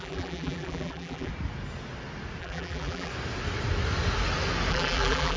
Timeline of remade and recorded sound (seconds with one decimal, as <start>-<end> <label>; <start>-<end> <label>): 0.0-1.3 remade; 1.3-2.4 recorded; 2.4-3.1 remade; 3.1-4.7 recorded; 4.7-5.4 remade